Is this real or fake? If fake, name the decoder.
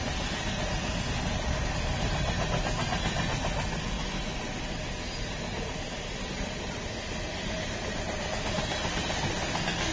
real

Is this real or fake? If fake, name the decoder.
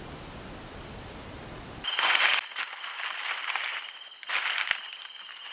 real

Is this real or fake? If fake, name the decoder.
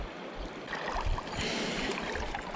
real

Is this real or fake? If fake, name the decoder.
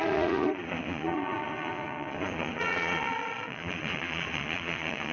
fake, vocoder, Vocos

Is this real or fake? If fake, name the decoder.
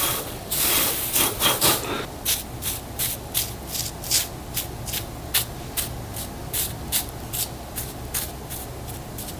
real